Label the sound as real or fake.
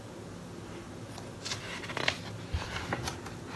real